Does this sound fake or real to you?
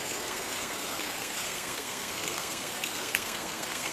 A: fake